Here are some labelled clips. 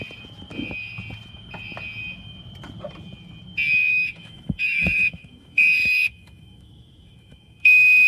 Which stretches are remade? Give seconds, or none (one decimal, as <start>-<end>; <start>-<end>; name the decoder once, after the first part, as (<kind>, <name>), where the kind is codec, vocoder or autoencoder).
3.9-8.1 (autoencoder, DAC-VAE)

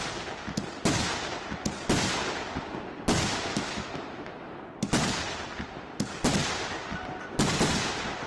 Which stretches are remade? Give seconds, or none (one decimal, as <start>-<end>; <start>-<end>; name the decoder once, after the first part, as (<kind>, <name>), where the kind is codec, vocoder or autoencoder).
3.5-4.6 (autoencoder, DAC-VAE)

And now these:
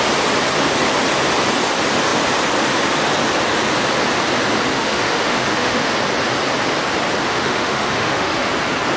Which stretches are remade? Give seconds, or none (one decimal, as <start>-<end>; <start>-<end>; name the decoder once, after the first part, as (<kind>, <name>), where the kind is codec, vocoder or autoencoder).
4.7-5.9 (autoencoder, DAC-VAE); 7.3-8.5

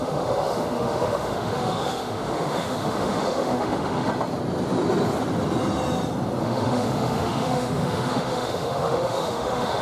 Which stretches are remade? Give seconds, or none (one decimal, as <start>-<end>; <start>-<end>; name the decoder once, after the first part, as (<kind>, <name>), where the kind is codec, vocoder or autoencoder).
0.0-4.1 (autoencoder, DAC-VAE); 6.4-9.8

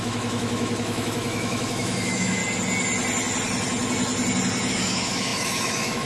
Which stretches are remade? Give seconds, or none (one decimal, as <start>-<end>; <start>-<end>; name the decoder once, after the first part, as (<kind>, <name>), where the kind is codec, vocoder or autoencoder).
0.0-2.4 (autoencoder, DAC-VAE); 4.7-6.1

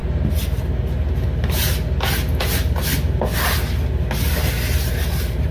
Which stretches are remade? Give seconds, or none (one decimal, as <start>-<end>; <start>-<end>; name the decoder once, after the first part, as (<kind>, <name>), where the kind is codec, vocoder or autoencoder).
none